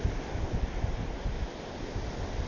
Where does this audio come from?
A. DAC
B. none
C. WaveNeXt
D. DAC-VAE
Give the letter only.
B